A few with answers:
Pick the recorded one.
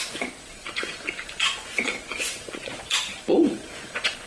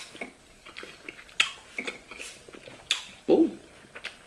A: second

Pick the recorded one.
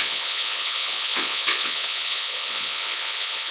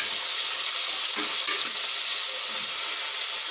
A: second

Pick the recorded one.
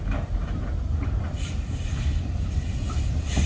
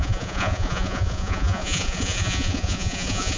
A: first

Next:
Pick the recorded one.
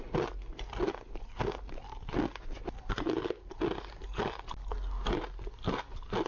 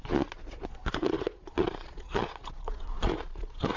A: first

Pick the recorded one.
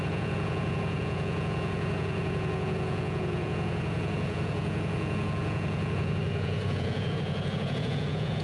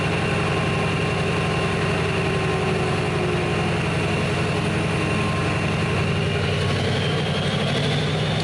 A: second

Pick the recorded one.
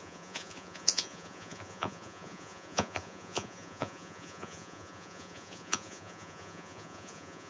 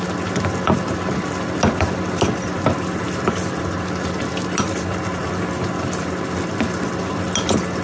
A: second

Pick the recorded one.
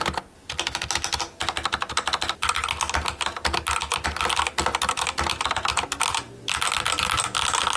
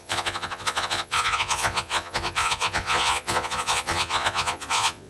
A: first